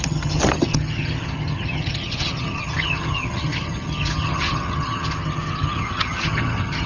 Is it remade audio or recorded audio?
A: remade